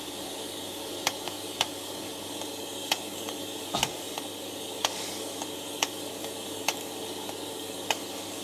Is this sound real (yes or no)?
no